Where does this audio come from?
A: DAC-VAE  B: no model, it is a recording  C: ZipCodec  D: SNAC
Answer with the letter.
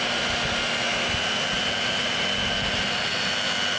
B